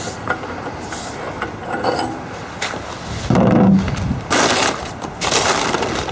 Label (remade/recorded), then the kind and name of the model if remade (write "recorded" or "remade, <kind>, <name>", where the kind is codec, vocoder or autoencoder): recorded